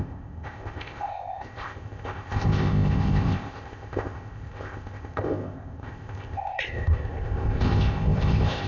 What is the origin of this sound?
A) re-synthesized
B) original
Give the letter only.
A